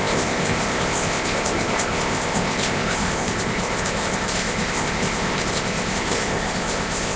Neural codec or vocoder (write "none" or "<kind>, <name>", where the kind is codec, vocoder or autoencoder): codec, ZipCodec